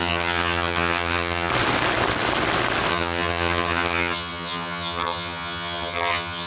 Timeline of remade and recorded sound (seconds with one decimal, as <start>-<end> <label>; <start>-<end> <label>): 0.0-1.5 remade; 1.5-2.9 recorded; 2.9-6.5 remade